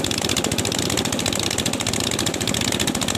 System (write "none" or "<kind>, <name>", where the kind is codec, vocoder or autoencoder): none